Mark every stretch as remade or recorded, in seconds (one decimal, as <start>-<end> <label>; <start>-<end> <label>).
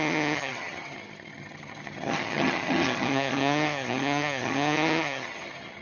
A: 0.0-5.8 remade